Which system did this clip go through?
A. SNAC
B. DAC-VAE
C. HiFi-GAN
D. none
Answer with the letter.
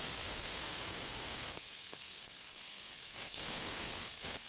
A